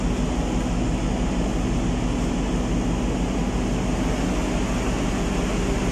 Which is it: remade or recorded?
recorded